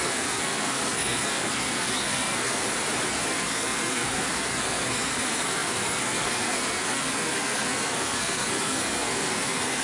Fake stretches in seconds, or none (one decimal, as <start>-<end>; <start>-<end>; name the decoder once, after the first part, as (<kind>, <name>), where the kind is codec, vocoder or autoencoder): 0.0-2.6 (codec, SNAC); 3.1-9.8